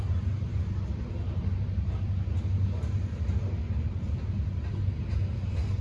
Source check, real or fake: real